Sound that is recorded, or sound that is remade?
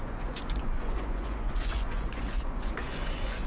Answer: remade